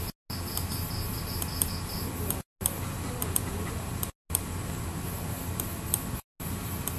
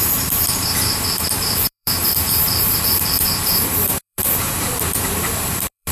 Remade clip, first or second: second